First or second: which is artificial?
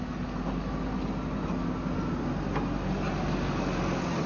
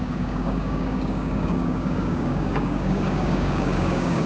second